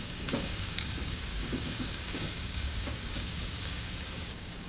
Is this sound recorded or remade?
remade